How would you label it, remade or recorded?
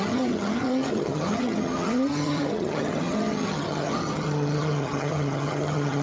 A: remade